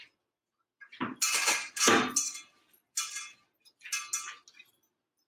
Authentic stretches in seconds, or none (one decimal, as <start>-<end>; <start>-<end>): 0.0-5.3